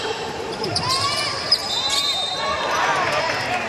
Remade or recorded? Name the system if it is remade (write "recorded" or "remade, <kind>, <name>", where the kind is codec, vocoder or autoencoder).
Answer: remade, vocoder, BigVGAN v2